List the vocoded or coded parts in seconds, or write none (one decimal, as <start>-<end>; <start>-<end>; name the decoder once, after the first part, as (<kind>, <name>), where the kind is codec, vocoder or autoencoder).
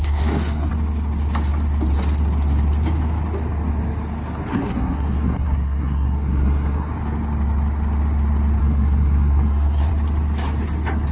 0.0-0.7 (codec, SNAC); 4.5-6.9; 8.6-9.9